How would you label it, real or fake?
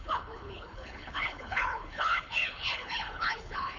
fake